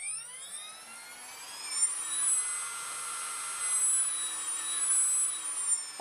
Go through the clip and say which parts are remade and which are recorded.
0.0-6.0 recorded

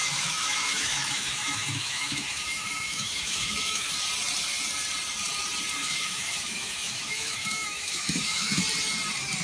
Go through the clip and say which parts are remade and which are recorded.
0.0-3.9 remade; 3.9-5.8 recorded; 5.8-8.6 remade; 8.6-9.4 recorded

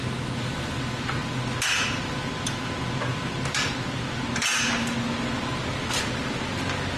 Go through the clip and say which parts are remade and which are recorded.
0.0-7.0 recorded